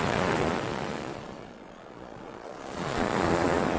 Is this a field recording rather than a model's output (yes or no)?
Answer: no